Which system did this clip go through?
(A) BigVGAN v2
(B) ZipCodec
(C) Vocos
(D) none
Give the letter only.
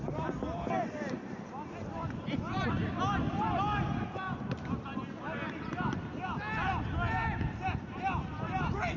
D